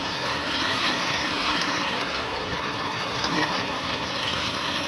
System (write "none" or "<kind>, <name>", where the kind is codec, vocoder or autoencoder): codec, SNAC